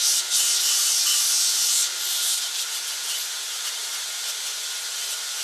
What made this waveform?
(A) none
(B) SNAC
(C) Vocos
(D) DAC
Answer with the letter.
A